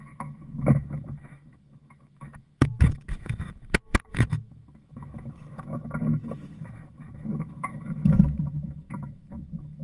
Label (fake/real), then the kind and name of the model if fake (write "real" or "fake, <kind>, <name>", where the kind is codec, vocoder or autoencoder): fake, autoencoder, DAC-VAE